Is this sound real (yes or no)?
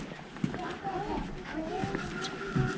yes